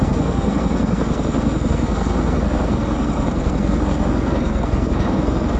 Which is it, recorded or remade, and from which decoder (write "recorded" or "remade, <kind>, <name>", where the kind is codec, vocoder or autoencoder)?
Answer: remade, codec, SNAC